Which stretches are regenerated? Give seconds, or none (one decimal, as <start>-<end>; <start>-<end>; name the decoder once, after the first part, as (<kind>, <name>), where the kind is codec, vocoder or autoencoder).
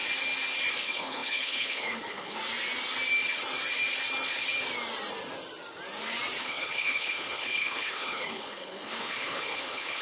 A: 0.7-2.4 (codec, HILCodec); 6.4-10.0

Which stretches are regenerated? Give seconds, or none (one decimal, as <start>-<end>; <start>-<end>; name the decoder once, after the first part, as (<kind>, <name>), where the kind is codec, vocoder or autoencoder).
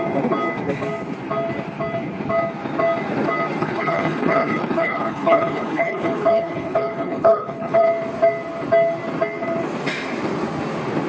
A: 3.6-7.8 (codec, HILCodec)